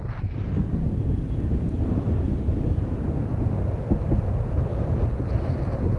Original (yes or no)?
yes